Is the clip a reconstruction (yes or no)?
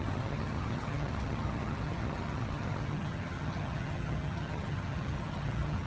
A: yes